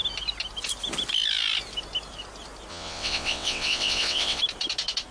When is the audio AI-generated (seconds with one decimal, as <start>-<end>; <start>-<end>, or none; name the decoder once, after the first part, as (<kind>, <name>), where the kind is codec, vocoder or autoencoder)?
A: 2.7-4.4 (vocoder, WaveNeXt)

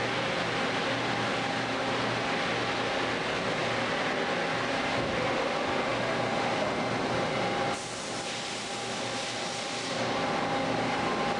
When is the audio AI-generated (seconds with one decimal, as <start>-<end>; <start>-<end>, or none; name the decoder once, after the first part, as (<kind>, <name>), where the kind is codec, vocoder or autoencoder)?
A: none

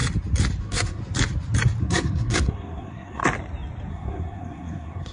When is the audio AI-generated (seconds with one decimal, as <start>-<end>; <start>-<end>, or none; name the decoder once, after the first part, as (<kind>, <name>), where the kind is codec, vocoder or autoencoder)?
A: 0.6-1.0 (codec, SNAC); 1.8-3.2; 3.9-5.1

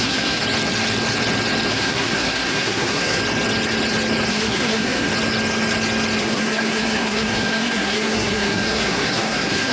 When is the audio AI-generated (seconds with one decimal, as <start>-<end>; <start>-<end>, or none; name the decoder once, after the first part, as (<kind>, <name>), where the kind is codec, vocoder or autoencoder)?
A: 0.0-0.4 (codec, SNAC); 1.7-3.2; 4.3-5.1; 6.2-9.7

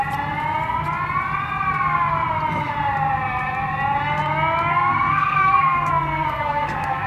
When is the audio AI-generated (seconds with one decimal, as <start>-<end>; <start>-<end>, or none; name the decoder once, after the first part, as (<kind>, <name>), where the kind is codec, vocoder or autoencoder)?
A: 4.7-7.1 (codec, SNAC)

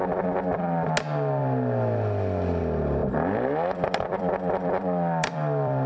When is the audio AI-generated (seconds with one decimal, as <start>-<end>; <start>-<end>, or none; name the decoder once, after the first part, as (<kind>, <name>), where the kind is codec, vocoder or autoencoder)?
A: 3.0-5.9 (vocoder, BigVGAN v2)

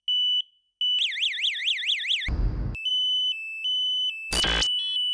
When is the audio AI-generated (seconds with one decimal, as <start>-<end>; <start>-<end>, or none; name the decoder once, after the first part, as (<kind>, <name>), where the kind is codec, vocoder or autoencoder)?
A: none